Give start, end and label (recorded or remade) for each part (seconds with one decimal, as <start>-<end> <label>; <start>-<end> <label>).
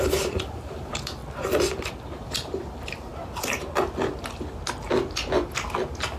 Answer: 0.0-1.2 remade; 1.2-1.8 recorded; 1.8-3.1 remade; 3.1-6.2 recorded